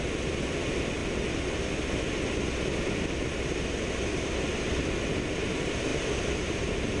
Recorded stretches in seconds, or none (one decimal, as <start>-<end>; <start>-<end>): 0.0-7.0